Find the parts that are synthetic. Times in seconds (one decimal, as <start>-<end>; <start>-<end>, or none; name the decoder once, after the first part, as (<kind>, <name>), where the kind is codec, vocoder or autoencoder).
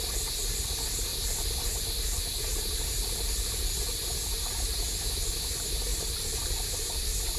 1.1-3.6 (vocoder, BigVGAN v2); 5.9-6.9